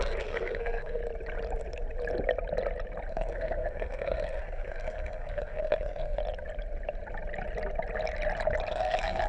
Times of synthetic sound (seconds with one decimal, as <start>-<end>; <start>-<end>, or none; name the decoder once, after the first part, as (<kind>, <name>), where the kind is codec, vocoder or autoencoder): 0.0-1.0 (codec, SNAC); 3.1-6.2; 8.7-9.3